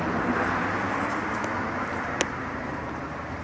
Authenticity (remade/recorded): recorded